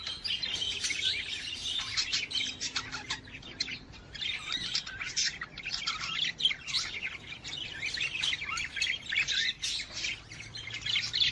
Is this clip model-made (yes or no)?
yes